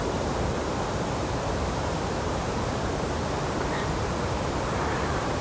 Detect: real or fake fake